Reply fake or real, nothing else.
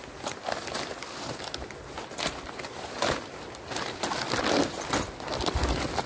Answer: real